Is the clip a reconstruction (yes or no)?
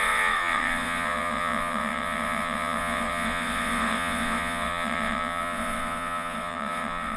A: yes